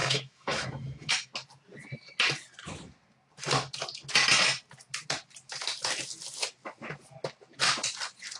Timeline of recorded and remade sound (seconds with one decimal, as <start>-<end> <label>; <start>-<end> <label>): 0.0-1.3 remade; 1.3-8.4 recorded